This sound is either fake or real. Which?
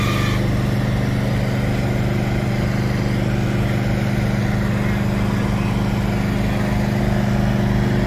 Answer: real